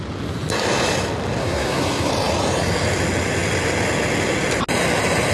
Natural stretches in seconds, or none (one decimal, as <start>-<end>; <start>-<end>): 0.0-1.4; 2.1-5.3